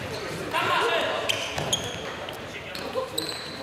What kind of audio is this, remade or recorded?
remade